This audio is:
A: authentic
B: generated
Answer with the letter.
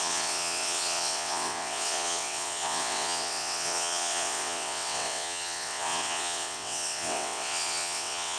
B